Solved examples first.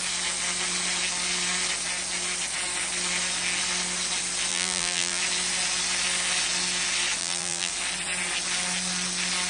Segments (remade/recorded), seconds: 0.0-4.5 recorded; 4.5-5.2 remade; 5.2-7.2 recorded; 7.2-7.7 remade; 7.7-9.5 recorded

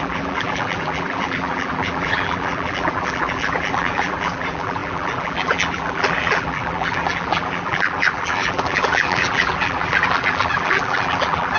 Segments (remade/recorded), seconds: 0.0-11.6 remade